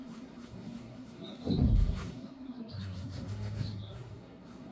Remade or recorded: remade